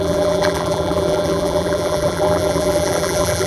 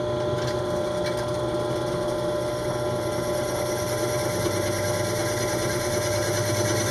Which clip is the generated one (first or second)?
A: first